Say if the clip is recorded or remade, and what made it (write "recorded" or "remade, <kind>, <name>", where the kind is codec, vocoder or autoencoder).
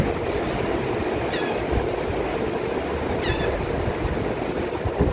recorded